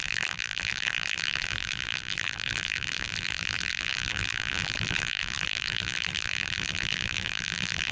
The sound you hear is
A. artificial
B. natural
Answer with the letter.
A